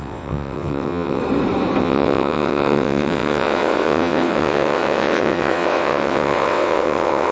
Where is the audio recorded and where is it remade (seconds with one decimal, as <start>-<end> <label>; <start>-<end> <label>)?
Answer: 0.0-1.2 remade; 1.2-1.8 recorded; 1.8-7.3 remade